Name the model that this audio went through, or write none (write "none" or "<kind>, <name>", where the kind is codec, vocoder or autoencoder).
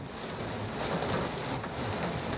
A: none